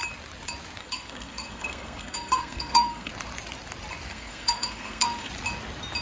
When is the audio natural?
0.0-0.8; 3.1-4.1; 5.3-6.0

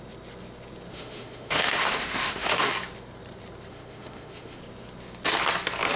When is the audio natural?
0.0-0.9; 2.7-3.7; 4.6-6.0

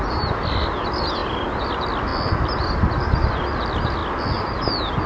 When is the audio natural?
0.0-5.1

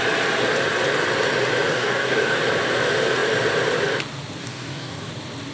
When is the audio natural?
0.0-1.7; 2.4-4.4; 5.1-5.5

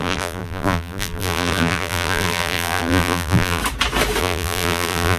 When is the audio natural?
3.6-4.2

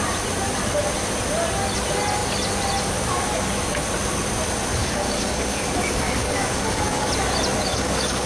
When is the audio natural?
0.0-4.8; 7.1-7.7

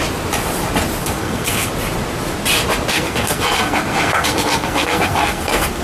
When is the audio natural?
0.0-1.0; 1.7-2.9